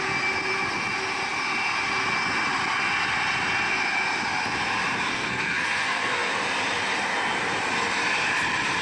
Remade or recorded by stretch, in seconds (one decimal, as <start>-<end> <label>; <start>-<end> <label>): 0.0-5.1 recorded; 5.1-6.3 remade; 6.3-8.8 recorded

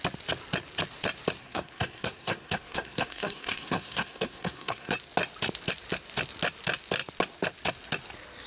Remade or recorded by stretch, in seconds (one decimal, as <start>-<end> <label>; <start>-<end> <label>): 0.0-1.4 recorded; 1.4-4.9 remade; 4.9-8.5 recorded

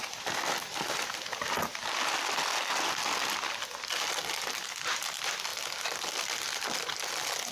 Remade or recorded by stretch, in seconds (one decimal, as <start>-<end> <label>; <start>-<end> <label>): 0.0-7.5 recorded

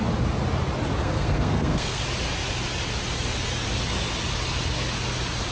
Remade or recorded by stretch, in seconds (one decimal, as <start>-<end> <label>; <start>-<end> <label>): 0.0-1.0 recorded; 1.0-2.0 remade; 2.0-5.5 recorded